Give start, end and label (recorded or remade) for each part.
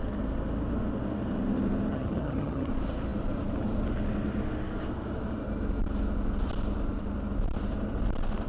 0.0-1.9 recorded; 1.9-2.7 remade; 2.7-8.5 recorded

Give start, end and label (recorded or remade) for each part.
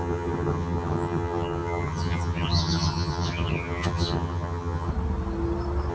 0.0-4.9 remade; 4.9-5.9 recorded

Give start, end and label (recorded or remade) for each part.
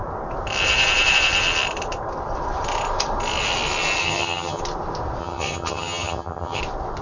0.0-4.0 recorded; 4.0-4.6 remade; 4.6-5.2 recorded; 5.2-6.6 remade; 6.6-7.0 recorded